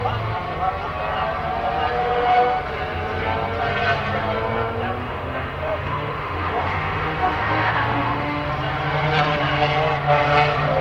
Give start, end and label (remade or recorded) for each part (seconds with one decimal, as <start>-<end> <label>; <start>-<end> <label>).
0.0-2.0 recorded; 2.0-2.6 remade; 2.6-5.0 recorded; 5.0-8.5 remade; 8.5-10.8 recorded